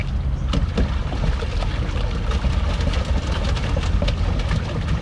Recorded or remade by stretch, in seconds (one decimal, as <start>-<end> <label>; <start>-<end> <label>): 0.0-5.0 recorded